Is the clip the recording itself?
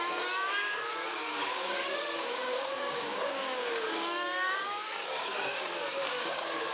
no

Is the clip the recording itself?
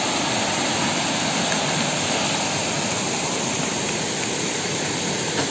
yes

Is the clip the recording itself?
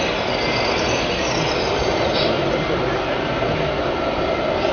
yes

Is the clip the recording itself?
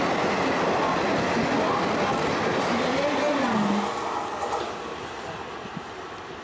yes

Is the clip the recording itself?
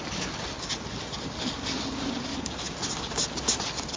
yes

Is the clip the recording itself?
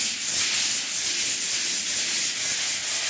yes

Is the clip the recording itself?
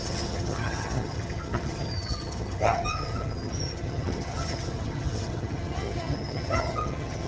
no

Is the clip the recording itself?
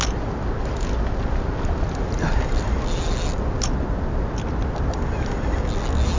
yes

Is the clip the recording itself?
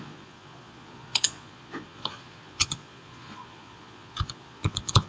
no